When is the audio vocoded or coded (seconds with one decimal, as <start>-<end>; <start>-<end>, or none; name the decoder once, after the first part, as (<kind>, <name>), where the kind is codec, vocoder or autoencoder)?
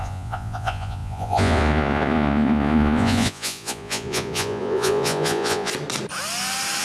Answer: 0.0-5.7 (vocoder, Vocos)